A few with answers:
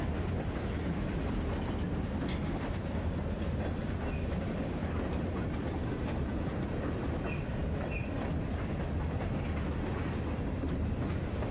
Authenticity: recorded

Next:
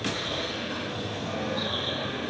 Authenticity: remade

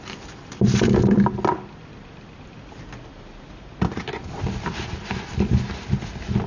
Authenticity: recorded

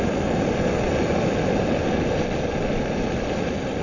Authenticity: recorded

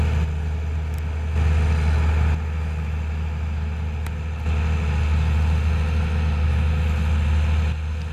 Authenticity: recorded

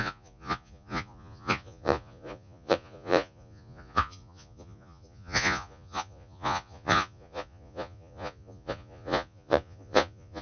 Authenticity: remade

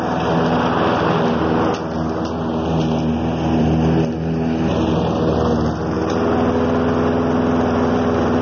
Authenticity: recorded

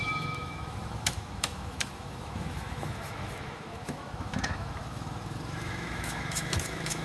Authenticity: remade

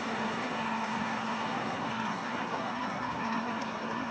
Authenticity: remade